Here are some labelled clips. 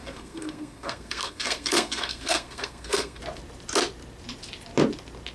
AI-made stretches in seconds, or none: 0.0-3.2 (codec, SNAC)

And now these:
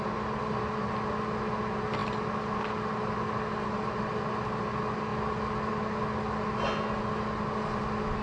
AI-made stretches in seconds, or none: none

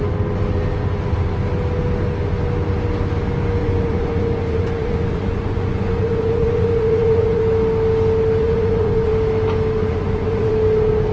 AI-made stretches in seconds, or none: 3.6-7.4 (vocoder, Vocos); 8.4-9.1; 9.8-10.5

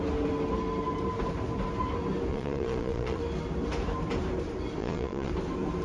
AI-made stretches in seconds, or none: 2.3-3.2 (vocoder, Vocos); 4.8-5.3

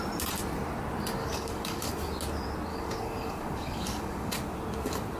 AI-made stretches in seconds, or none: 1.2-1.9 (codec, DAC); 2.7-4.3

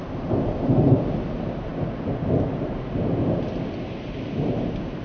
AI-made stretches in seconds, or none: none